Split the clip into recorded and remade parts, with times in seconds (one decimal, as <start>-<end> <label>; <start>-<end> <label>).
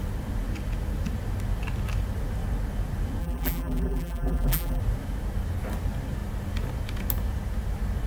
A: 0.0-3.2 recorded; 3.2-4.8 remade; 4.8-8.1 recorded